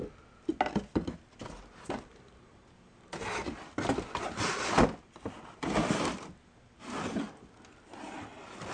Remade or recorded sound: recorded